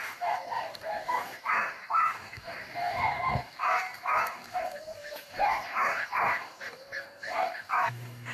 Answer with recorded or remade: remade